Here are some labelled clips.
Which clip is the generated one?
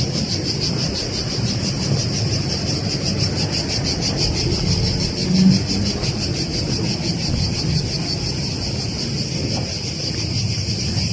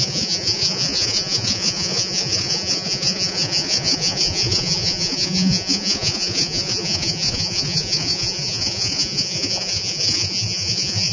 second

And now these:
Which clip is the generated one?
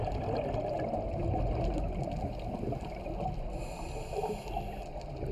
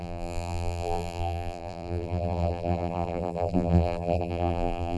second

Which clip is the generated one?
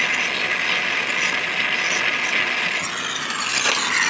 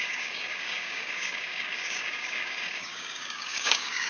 second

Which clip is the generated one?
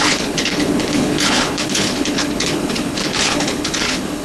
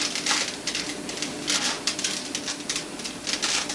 first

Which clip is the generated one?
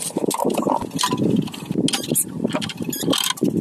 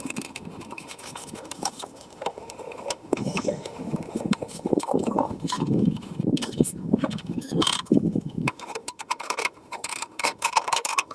second